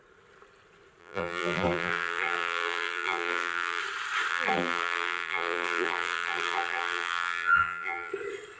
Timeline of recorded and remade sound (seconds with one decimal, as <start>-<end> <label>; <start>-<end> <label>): 0.0-1.0 recorded; 1.0-3.8 remade; 3.8-4.3 recorded; 4.3-8.1 remade; 8.1-8.6 recorded